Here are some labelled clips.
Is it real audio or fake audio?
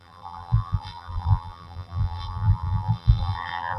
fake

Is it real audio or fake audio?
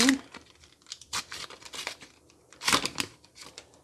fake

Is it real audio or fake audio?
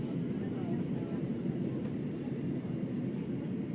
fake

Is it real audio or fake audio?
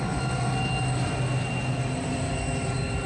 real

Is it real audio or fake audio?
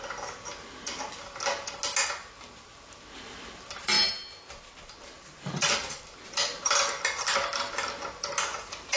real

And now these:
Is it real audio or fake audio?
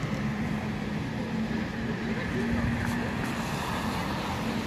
real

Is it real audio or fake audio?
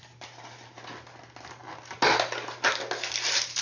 real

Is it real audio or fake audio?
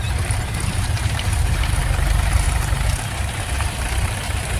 fake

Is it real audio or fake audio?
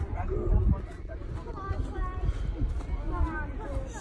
real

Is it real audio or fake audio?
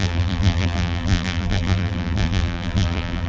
fake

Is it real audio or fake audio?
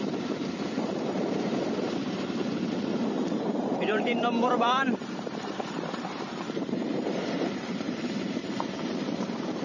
fake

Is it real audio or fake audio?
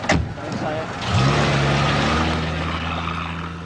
real